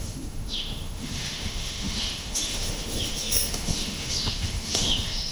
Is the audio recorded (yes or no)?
no